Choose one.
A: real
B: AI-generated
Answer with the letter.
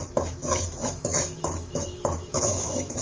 B